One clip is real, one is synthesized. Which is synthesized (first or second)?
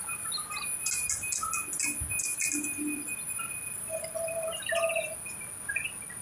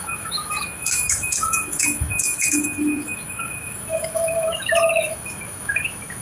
second